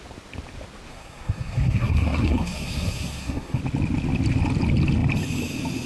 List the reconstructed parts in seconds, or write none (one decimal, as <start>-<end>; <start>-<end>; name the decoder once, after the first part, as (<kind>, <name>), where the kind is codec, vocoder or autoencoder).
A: 0.9-3.6 (codec, SNAC)